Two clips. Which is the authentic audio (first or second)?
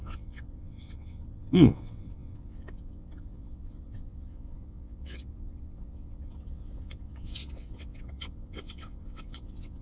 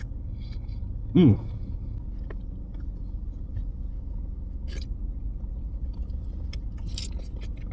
second